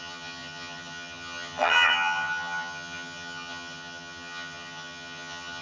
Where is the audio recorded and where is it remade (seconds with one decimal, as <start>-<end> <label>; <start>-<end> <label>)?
0.0-5.6 remade